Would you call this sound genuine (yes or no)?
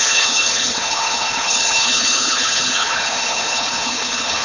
no